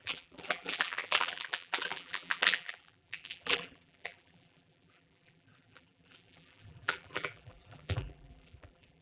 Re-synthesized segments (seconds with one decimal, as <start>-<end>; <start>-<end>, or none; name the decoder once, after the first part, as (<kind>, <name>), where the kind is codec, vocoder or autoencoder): 0.0-9.0 (vocoder, BigVGAN v2)